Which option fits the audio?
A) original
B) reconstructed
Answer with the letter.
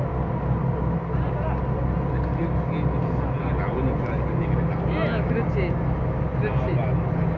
A